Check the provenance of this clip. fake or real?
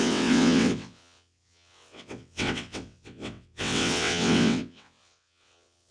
fake